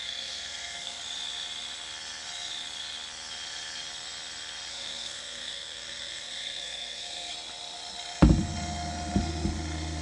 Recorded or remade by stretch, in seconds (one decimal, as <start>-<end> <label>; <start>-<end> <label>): 0.0-1.0 remade; 1.0-4.7 recorded; 4.7-7.3 remade; 7.3-10.0 recorded